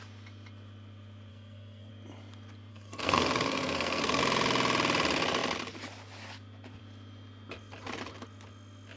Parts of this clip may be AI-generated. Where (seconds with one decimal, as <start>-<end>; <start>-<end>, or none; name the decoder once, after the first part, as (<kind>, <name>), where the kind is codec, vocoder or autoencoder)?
1.3-1.9 (codec, SNAC); 2.7-4.2